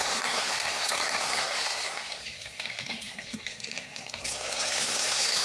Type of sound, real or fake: fake